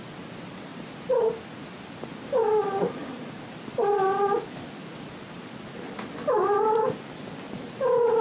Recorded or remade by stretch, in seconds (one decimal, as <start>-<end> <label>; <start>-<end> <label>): 0.0-8.2 recorded